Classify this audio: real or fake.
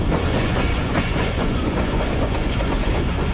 fake